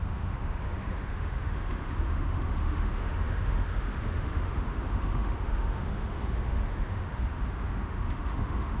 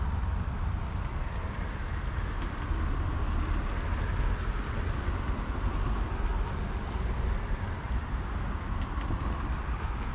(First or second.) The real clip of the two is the second